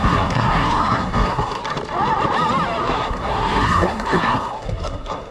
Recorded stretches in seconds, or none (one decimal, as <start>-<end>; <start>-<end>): 1.6-2.8